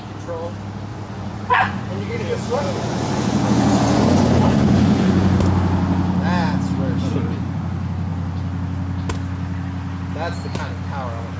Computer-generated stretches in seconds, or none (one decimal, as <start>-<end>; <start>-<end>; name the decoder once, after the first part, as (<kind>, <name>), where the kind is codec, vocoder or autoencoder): 0.9-5.4 (vocoder, Vocos); 7.0-7.6